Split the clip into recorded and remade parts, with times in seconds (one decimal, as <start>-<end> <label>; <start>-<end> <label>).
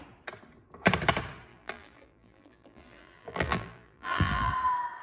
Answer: 0.0-1.5 recorded; 1.5-4.5 remade; 4.5-5.0 recorded